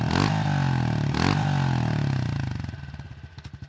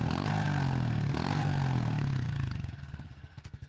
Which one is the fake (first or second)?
second